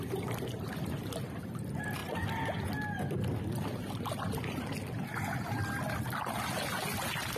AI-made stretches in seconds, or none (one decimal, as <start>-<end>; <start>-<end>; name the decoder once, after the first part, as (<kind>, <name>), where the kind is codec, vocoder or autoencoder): none